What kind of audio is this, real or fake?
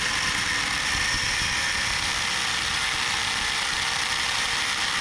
fake